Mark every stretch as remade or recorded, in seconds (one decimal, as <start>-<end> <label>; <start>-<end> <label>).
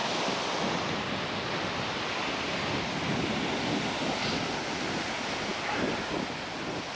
0.0-7.0 recorded